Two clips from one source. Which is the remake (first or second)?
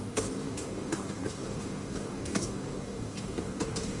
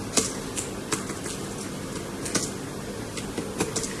first